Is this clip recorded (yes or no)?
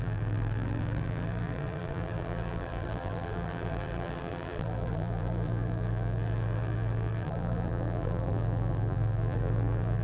no